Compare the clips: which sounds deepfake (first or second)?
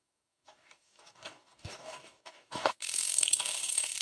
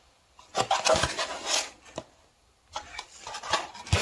first